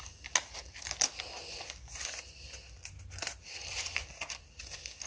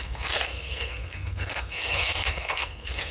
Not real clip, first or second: second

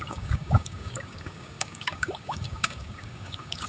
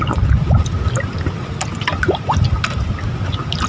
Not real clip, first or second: first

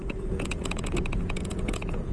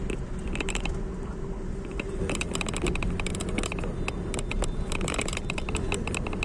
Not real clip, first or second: first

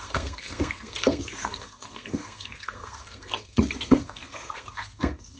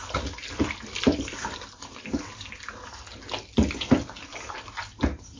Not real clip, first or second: first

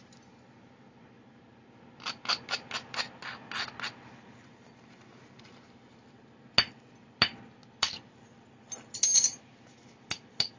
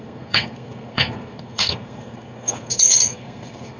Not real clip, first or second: second